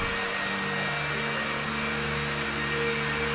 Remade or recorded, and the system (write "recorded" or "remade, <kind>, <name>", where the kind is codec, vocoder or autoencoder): recorded